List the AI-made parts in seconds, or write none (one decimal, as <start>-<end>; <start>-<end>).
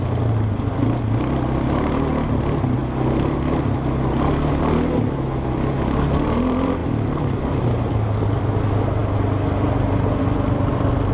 none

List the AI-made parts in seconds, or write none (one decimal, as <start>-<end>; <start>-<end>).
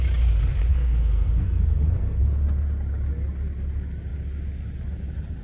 0.7-2.2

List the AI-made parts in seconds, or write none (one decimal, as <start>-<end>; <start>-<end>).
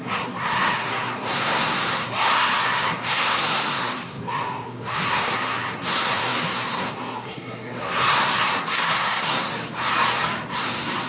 0.0-9.5; 10.5-11.1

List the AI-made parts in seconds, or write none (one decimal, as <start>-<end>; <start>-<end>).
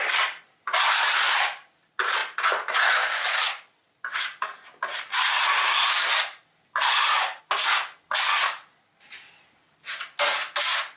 none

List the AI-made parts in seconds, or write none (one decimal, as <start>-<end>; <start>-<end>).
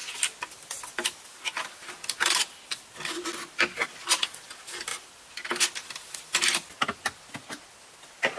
none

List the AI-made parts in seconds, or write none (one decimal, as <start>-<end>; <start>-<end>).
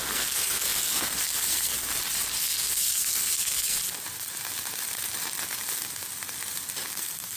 0.0-1.7; 2.4-3.8; 6.9-7.4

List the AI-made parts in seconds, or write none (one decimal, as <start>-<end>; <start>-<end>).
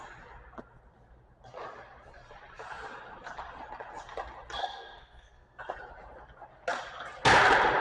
4.6-5.6